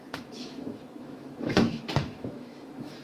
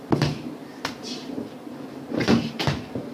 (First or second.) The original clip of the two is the second